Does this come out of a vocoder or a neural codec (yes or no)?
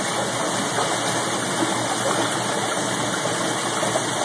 no